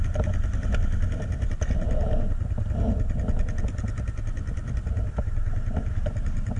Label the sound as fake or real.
real